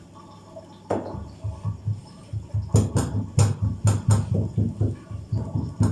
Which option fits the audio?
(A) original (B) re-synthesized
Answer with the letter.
A